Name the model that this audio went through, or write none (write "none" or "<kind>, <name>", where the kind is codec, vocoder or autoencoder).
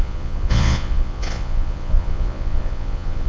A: vocoder, Vocos